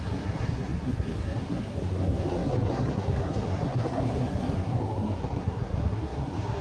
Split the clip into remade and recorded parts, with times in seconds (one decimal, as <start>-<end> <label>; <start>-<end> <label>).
0.0-6.6 remade